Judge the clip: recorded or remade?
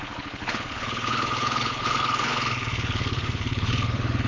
remade